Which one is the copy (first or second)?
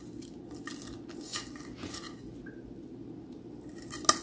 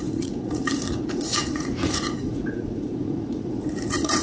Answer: second